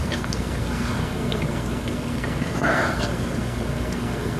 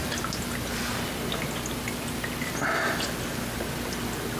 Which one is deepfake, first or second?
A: first